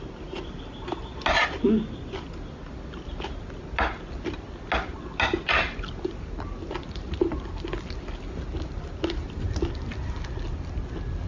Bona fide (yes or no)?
yes